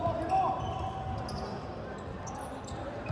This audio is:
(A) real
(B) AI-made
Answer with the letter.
A